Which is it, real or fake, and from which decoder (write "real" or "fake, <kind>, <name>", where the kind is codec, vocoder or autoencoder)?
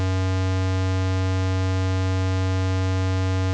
real